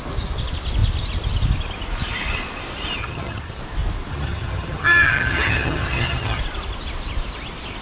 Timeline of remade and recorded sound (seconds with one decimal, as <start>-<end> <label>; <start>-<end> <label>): 0.0-3.0 recorded; 3.0-3.6 remade; 3.6-4.1 recorded; 4.1-6.4 remade; 6.4-7.8 recorded